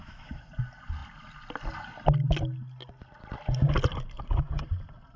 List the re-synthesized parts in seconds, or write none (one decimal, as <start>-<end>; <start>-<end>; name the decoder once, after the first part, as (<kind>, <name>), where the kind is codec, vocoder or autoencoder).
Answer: 0.0-0.5 (autoencoder, DAC-VAE)